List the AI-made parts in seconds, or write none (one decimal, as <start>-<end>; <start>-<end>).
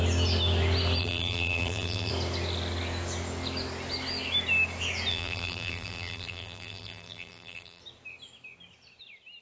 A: 1.0-2.1; 5.1-7.8